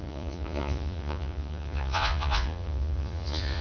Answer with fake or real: fake